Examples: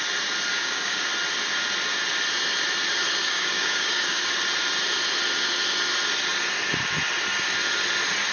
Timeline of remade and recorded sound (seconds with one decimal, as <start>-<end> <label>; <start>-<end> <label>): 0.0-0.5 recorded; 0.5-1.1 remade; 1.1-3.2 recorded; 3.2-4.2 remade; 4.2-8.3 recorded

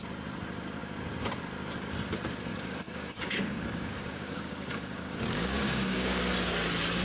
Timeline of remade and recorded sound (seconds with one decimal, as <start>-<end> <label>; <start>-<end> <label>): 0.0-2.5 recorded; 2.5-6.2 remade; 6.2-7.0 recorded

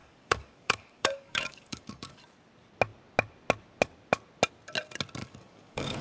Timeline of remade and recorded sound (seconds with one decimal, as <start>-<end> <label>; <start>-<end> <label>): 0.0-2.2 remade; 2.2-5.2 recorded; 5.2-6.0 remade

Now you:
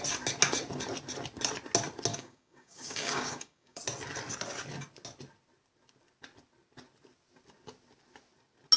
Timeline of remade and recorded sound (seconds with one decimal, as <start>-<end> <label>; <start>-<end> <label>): 0.0-2.1 recorded; 2.1-3.8 remade; 3.8-8.8 recorded

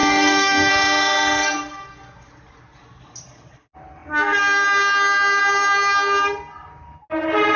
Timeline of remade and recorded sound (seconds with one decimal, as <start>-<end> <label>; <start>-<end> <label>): 0.0-0.7 remade; 0.7-7.6 recorded